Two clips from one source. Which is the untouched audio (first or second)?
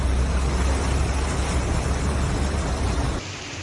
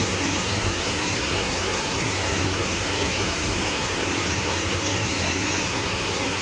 first